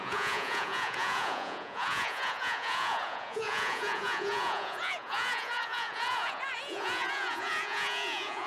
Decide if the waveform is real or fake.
fake